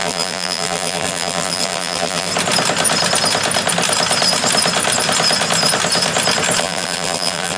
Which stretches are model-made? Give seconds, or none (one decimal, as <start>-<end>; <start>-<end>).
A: 0.0-2.3; 6.6-7.6